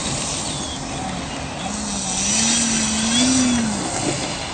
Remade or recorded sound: recorded